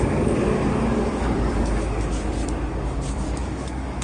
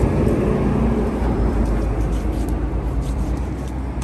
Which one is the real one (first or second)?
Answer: second